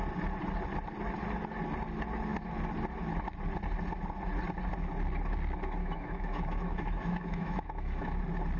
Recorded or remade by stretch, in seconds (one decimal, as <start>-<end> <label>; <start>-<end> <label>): 0.0-5.8 recorded; 5.8-8.2 remade; 8.2-8.6 recorded